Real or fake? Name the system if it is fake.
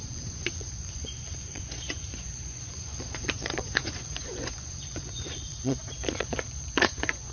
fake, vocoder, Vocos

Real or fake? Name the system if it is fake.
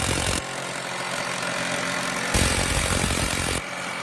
real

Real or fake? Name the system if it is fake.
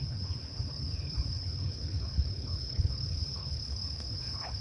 fake, codec, HILCodec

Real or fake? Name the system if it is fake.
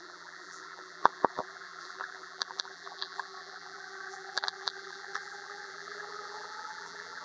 fake, vocoder, BigVGAN v2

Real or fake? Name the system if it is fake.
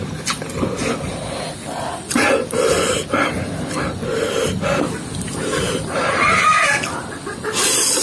real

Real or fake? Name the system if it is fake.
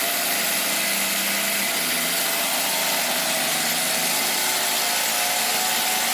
real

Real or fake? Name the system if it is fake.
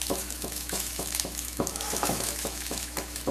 fake, autoencoder, DAC-VAE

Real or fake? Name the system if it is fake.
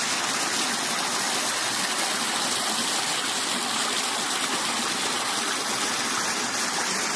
real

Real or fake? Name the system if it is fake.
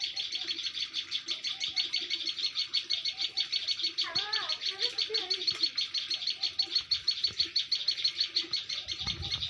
real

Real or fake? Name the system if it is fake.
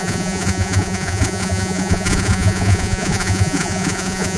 fake, vocoder, Vocos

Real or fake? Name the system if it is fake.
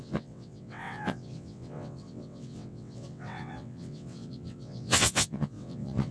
fake, vocoder, WaveNeXt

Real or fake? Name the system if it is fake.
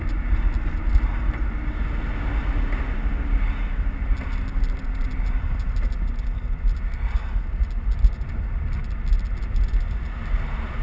real